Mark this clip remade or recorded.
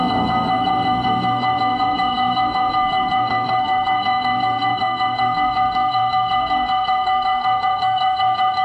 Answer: remade